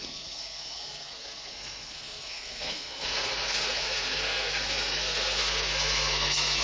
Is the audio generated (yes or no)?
yes